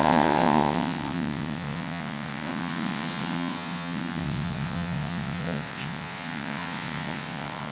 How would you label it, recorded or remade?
remade